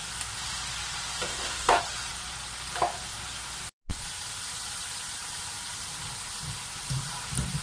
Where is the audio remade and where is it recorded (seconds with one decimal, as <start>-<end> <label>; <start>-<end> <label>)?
0.0-1.3 recorded; 1.3-1.8 remade; 1.8-7.6 recorded